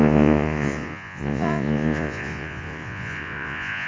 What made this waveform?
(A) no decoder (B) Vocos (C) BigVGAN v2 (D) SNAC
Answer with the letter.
B